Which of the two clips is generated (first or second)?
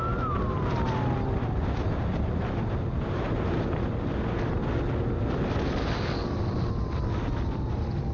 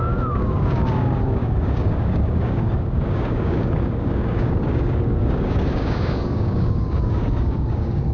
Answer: second